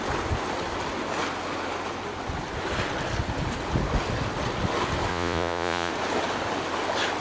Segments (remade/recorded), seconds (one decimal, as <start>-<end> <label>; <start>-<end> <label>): 0.0-5.1 recorded; 5.1-5.9 remade; 5.9-7.2 recorded